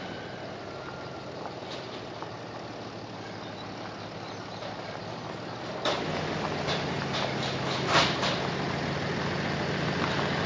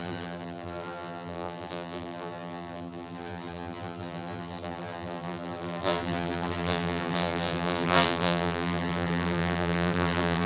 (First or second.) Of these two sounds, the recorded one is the first